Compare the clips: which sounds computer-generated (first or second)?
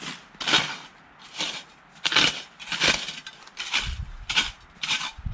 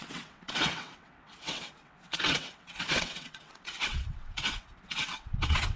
second